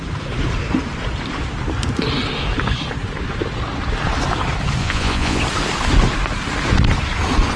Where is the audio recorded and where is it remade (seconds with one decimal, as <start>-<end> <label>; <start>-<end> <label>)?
0.0-4.8 recorded; 4.8-5.4 remade; 5.4-7.6 recorded